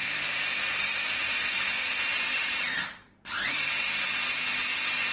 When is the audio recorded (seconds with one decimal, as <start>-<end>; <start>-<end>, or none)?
0.0-1.0; 4.1-5.1